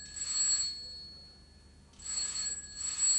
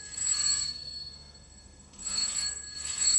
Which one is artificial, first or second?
second